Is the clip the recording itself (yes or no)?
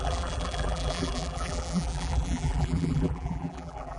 no